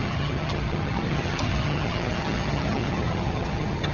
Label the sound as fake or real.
fake